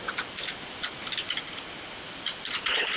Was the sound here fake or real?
real